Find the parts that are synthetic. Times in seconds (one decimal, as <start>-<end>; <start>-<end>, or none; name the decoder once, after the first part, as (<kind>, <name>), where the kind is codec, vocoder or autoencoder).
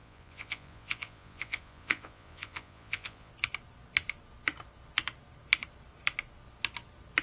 0.0-3.3 (vocoder, Vocos)